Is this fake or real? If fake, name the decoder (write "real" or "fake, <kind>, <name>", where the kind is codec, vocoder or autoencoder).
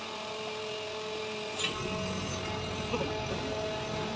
real